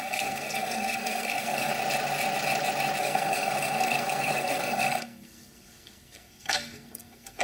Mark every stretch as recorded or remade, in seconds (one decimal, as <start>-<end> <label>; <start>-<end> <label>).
0.0-1.7 remade; 1.7-3.0 recorded; 3.0-7.4 remade